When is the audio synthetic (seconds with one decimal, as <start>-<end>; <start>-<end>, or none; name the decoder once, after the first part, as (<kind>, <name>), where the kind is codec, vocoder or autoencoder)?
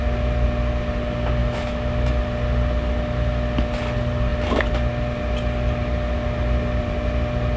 1.4-2.1 (autoencoder, DAC-VAE)